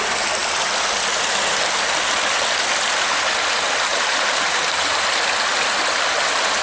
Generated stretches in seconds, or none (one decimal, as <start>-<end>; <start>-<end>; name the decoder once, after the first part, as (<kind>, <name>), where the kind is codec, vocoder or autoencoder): 3.9-5.0 (vocoder, BigVGAN v2)